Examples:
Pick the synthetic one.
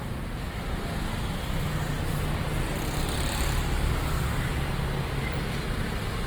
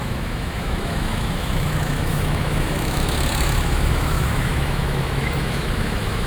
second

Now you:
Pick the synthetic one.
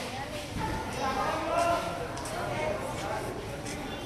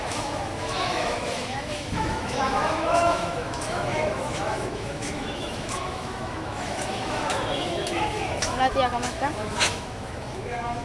second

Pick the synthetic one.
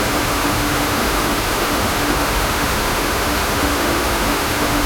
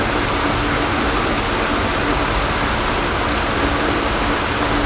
first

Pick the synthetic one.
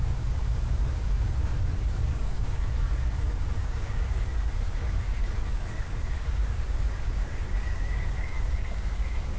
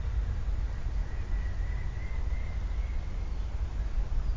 first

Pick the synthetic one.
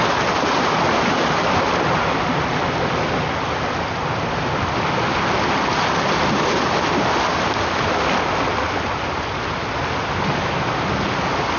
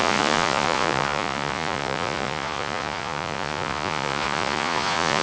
second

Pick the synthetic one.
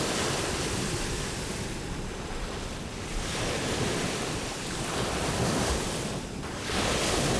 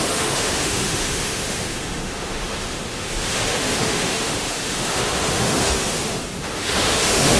second